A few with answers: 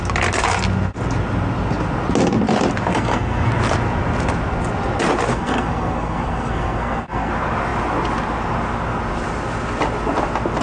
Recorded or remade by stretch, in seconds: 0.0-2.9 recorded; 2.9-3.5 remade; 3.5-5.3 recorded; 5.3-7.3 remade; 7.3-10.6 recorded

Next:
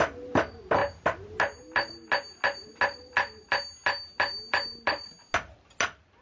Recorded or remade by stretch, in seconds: 0.0-6.2 recorded

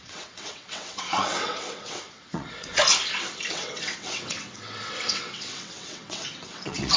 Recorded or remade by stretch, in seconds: 0.0-2.8 remade; 2.8-3.5 recorded; 3.5-7.0 remade

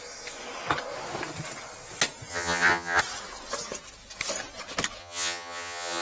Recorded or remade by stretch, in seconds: 0.0-2.3 recorded; 2.3-3.0 remade; 3.0-5.0 recorded; 5.0-6.0 remade

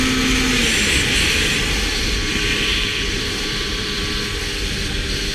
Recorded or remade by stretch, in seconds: 0.0-1.5 recorded; 1.5-2.3 remade; 2.3-2.7 recorded; 2.7-4.0 remade; 4.0-5.3 recorded

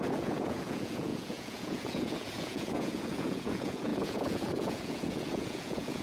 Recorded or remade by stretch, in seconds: 0.0-6.0 remade

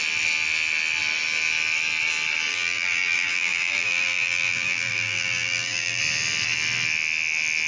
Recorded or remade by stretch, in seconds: 0.0-2.5 recorded; 2.5-6.0 remade; 6.0-7.7 recorded